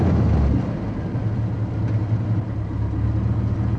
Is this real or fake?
real